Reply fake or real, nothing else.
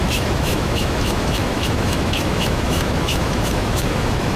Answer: fake